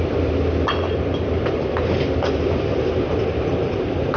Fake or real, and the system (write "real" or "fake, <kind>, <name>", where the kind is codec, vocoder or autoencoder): fake, vocoder, BigVGAN v2